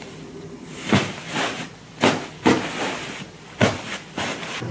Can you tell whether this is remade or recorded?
remade